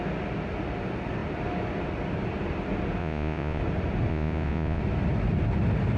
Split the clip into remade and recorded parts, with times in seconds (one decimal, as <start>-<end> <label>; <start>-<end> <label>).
0.0-3.0 recorded; 3.0-3.6 remade; 3.6-4.1 recorded; 4.1-4.8 remade; 4.8-6.0 recorded